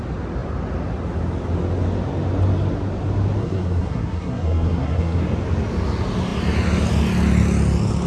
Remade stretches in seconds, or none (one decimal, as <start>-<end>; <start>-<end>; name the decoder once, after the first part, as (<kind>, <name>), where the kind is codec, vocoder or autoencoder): 3.4-5.2 (codec, SNAC)